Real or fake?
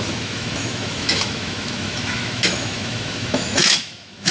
fake